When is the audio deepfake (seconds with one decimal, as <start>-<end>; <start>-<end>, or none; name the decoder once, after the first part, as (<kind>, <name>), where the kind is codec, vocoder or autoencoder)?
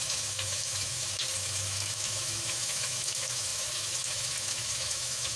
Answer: 0.0-5.4 (autoencoder, DAC-VAE)